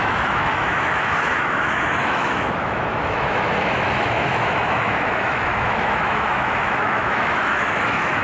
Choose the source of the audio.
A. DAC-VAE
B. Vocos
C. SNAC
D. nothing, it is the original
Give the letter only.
A